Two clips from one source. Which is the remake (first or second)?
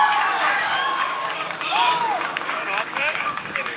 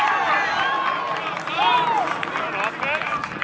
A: first